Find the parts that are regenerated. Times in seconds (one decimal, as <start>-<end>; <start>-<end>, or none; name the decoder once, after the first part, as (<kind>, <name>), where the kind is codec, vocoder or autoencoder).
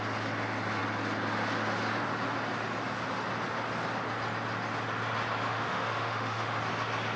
5.5-6.6 (autoencoder, DAC-VAE)